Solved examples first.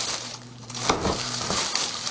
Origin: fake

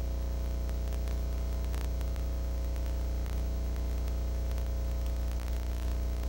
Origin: real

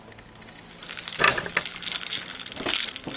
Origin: real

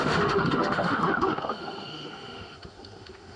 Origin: fake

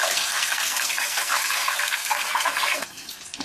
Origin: fake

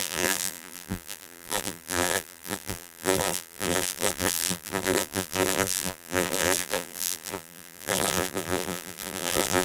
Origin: fake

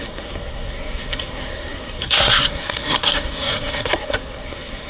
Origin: fake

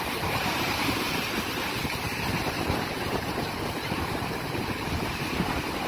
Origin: fake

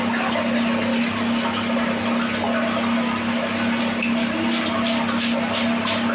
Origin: real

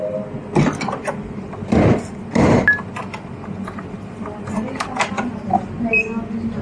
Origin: real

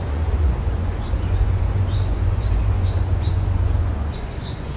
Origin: fake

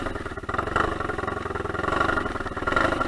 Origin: real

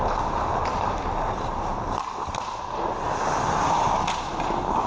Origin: real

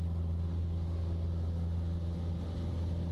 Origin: real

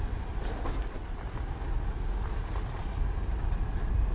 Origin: real